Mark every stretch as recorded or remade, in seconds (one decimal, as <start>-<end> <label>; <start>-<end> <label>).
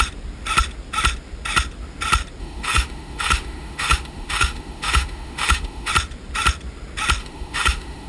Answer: 0.0-2.4 recorded; 2.4-5.9 remade; 5.9-7.2 recorded; 7.2-8.1 remade